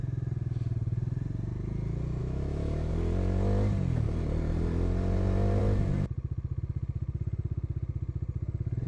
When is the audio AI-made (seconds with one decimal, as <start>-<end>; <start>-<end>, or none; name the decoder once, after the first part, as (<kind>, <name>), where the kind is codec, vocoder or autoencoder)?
2.2-2.9 (autoencoder, DAC-VAE)